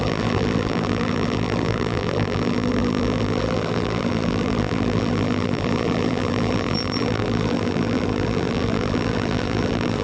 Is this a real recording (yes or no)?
no